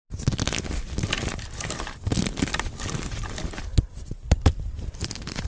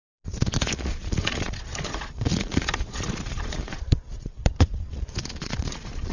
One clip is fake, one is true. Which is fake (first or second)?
second